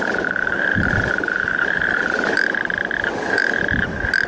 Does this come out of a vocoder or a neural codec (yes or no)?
no